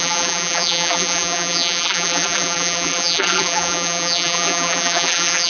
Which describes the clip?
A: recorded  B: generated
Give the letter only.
B